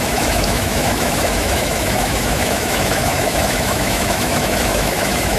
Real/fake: fake